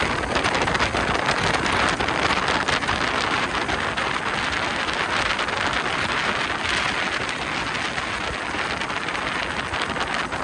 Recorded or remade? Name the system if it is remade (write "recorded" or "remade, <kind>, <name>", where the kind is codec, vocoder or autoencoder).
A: recorded